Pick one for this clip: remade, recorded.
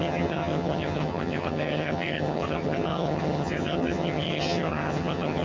remade